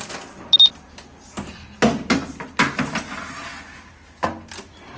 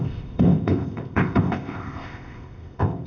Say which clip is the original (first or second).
first